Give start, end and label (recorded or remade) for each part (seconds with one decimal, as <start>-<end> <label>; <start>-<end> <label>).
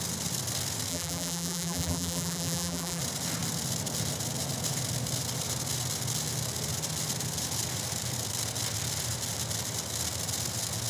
0.0-0.9 recorded; 0.9-3.0 remade; 3.0-10.9 recorded